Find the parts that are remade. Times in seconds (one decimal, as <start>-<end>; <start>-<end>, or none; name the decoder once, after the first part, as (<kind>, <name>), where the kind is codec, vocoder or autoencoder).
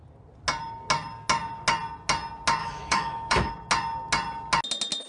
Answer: 2.6-3.5 (autoencoder, DAC-VAE)